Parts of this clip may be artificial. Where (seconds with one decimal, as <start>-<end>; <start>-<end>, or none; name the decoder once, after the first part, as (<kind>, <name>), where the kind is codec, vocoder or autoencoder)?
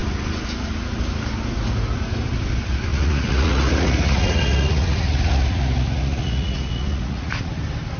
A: 2.9-7.5 (vocoder, Vocos)